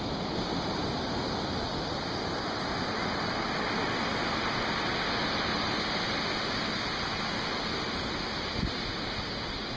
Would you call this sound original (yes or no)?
yes